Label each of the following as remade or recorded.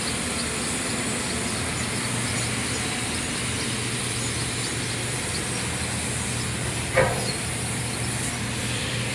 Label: recorded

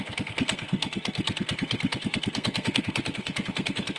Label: remade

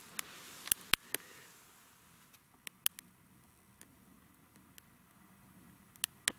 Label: recorded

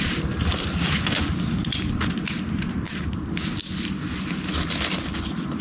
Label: recorded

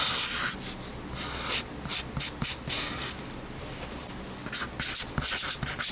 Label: recorded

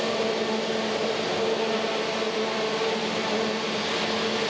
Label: recorded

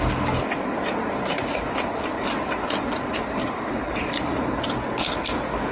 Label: recorded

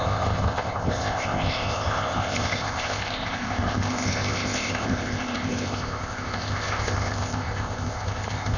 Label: remade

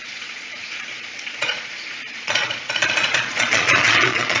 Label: remade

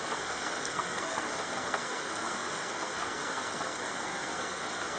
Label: remade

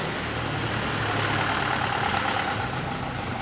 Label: recorded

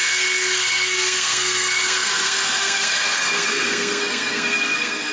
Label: remade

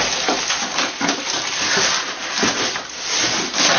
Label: recorded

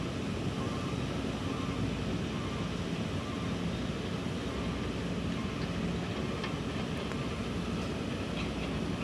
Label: recorded